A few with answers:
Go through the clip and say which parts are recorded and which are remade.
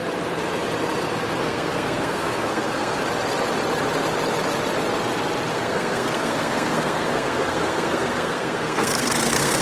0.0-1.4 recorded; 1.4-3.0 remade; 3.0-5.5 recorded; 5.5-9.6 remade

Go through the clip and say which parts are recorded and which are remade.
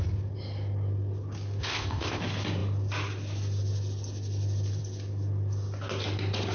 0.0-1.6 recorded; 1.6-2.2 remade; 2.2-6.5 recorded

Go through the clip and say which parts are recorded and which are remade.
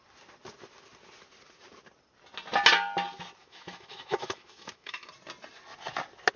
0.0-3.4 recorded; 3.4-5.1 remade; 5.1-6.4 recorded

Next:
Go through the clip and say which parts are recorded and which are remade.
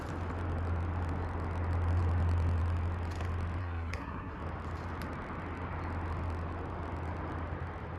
0.0-3.6 recorded; 3.6-4.4 remade; 4.4-8.0 recorded